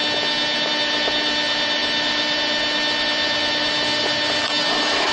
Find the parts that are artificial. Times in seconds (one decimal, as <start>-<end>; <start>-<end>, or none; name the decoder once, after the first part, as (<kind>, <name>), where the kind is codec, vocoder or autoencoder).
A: 0.7-5.1 (vocoder, BigVGAN v2)